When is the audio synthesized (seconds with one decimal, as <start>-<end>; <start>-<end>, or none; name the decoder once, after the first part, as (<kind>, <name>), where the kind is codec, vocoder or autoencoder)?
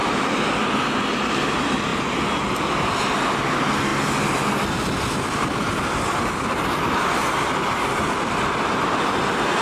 none